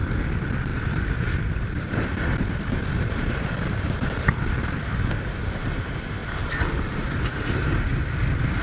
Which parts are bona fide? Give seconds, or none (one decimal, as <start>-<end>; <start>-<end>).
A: 0.0-0.7; 5.3-8.6